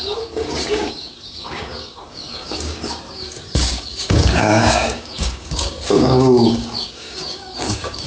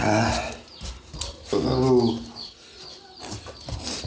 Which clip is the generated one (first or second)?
first